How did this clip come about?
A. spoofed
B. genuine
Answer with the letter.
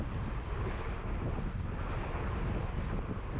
B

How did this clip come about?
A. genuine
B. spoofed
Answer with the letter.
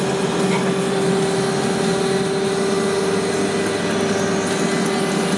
A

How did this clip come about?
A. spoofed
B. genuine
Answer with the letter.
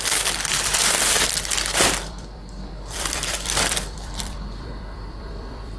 A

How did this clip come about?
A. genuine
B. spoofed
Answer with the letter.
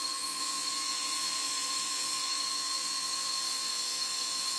B